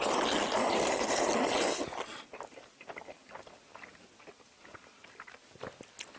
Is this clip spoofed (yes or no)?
no